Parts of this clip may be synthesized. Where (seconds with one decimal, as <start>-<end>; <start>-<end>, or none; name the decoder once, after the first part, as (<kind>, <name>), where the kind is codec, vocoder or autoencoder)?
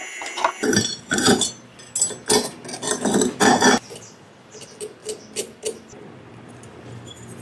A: 0.9-1.5 (vocoder, BigVGAN v2)